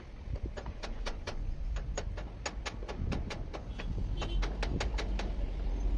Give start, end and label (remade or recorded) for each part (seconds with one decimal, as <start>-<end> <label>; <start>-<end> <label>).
0.0-0.6 recorded; 0.6-2.1 remade; 2.1-2.8 recorded; 2.8-3.8 remade; 3.8-6.0 recorded